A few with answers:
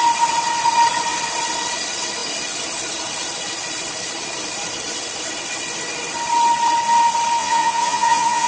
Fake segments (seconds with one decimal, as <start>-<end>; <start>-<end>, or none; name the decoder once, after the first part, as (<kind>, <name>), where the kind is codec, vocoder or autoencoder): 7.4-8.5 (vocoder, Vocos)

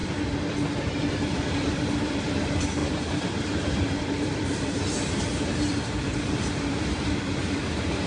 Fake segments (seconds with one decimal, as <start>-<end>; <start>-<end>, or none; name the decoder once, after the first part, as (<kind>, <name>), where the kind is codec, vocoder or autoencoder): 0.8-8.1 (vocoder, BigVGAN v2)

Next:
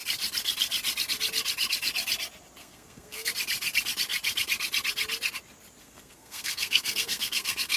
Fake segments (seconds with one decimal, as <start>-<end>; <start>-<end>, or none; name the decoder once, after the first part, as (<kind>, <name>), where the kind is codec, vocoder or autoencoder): 2.6-3.3 (codec, SNAC); 5.8-7.8